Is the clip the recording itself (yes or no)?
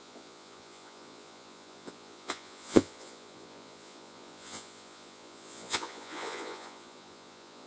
no